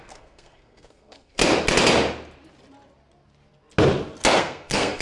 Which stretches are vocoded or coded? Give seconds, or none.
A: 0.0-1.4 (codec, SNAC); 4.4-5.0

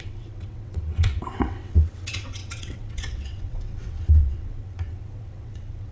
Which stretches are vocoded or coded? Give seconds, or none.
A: 0.0-5.9 (vocoder, WaveNeXt)

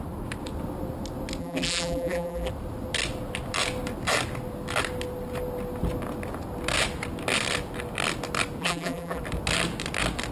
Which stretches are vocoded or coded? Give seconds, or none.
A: 1.4-2.5 (vocoder, BigVGAN v2); 8.6-9.2